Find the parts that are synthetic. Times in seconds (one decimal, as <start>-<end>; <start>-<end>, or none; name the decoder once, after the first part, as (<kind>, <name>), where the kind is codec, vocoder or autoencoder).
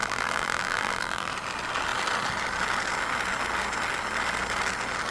0.0-1.3 (vocoder, BigVGAN v2)